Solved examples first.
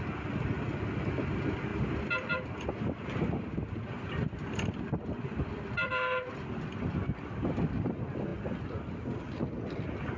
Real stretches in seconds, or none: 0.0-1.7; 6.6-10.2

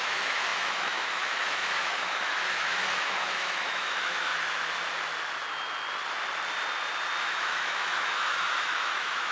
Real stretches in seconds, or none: 4.3-7.2

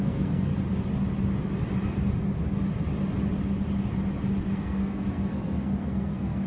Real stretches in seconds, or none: 0.5-4.4

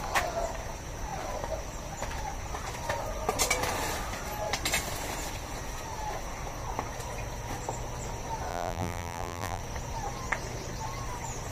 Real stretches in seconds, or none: 0.0-8.5; 9.6-11.5

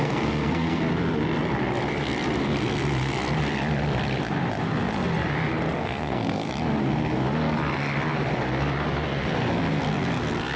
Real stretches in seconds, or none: 0.8-5.8; 6.5-10.6

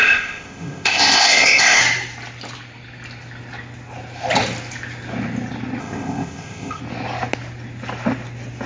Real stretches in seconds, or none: 1.8-5.8; 6.8-8.7